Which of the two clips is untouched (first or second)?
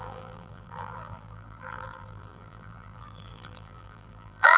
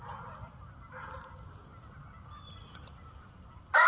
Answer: second